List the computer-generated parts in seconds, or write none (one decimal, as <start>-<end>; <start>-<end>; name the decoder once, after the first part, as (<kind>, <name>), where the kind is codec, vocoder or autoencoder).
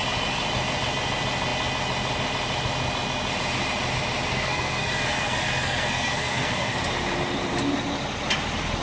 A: 4.3-6.8 (codec, SNAC)